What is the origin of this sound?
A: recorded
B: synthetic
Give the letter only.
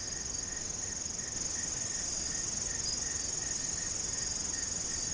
A